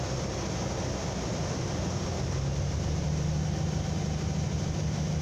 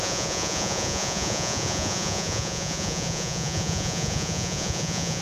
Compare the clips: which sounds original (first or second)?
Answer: first